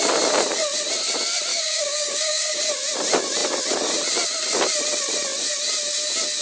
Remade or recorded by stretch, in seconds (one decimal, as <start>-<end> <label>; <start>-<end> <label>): 0.0-1.5 recorded; 1.5-2.6 remade; 2.6-6.4 recorded